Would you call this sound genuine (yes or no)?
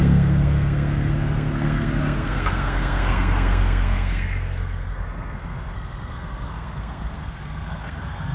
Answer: no